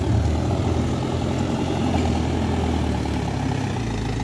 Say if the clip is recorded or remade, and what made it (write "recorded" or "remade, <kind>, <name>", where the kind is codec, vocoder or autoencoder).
recorded